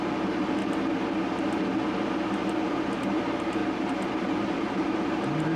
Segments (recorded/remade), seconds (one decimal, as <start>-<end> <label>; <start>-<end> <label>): 0.0-0.6 remade; 0.6-2.7 recorded; 2.7-5.6 remade